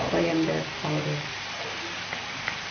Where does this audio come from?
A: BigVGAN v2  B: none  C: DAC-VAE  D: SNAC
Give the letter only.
B